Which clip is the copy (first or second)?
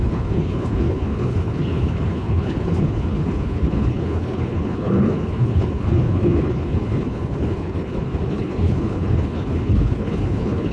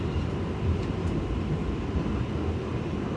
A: first